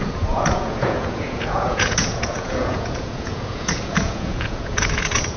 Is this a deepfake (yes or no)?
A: yes